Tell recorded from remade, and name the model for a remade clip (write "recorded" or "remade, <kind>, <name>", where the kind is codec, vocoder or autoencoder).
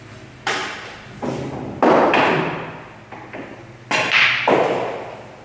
recorded